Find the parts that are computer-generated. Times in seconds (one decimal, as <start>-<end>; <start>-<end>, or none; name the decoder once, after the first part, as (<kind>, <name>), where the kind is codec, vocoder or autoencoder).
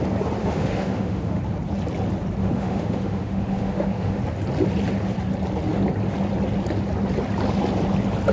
0.4-1.4 (autoencoder, DAC-VAE); 2.4-4.2